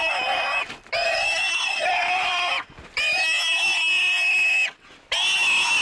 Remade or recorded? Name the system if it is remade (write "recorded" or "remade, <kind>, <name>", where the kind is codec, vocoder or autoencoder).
recorded